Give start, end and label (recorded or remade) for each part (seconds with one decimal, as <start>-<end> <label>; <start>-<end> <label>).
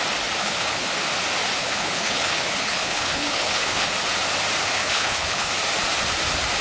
0.0-0.4 recorded; 0.4-0.9 remade; 0.9-1.6 recorded; 1.6-3.9 remade; 3.9-4.6 recorded; 4.6-5.5 remade; 5.5-6.6 recorded